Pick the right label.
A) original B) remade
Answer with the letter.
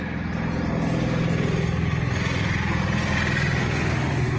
A